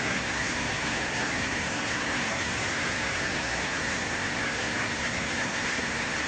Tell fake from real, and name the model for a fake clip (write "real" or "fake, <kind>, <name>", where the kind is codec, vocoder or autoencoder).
fake, codec, SNAC